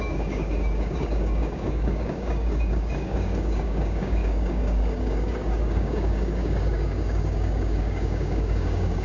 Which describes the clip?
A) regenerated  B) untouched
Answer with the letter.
A